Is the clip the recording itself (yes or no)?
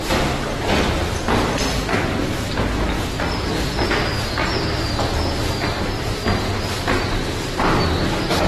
yes